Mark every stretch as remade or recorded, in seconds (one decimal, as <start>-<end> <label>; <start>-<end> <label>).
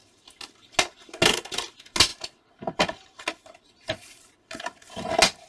0.0-5.5 recorded